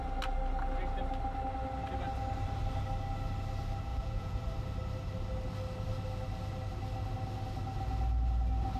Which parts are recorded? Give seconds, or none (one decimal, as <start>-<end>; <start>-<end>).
0.0-3.9; 4.4-8.8